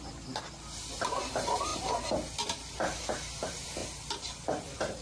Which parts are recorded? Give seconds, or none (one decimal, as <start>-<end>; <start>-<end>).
0.0-5.0